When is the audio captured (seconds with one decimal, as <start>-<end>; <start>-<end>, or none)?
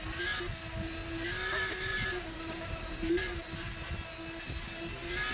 0.0-1.9; 3.2-5.3